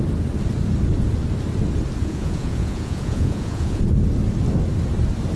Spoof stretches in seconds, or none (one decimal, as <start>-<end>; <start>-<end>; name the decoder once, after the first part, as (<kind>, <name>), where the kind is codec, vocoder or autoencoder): 2.0-3.8 (vocoder, Vocos)